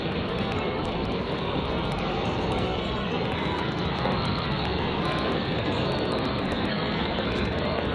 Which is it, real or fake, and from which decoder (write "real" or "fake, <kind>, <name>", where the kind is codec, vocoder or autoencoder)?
fake, codec, SNAC